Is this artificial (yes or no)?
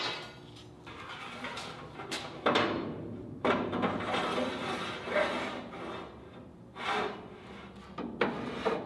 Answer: no